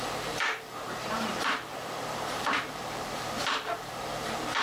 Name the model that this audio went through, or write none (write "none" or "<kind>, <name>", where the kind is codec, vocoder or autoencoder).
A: vocoder, BigVGAN v2